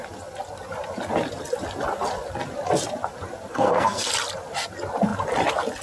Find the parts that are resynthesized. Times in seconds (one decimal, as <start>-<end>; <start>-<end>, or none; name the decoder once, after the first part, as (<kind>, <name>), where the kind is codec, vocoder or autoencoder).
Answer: 3.5-4.1 (codec, SNAC)